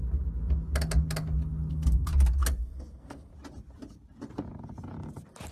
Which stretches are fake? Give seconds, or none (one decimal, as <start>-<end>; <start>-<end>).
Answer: 1.7-2.1; 2.6-3.3